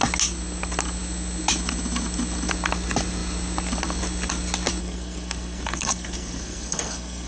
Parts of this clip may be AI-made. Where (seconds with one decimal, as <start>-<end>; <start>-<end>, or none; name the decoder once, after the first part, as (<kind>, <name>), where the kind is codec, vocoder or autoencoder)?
4.8-7.3 (codec, SNAC)

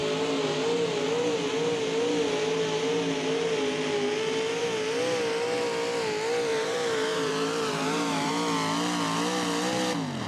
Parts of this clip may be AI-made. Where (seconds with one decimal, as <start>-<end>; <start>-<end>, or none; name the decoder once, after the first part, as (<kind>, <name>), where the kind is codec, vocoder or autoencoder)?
6.5-8.3 (vocoder, BigVGAN v2)

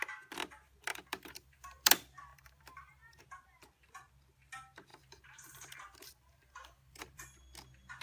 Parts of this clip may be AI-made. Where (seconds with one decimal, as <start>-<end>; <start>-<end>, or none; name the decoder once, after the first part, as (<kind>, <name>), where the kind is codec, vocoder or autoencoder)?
0.9-1.9 (vocoder, BigVGAN v2); 2.3-3.2; 4.9-7.2

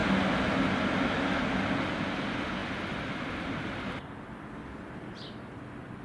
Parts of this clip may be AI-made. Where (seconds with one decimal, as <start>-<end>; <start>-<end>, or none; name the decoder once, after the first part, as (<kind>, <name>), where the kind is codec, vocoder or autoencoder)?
none

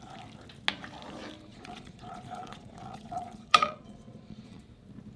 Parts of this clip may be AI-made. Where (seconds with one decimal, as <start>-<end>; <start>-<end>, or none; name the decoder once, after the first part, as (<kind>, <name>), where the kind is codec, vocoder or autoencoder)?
1.5-4.6 (vocoder, Vocos)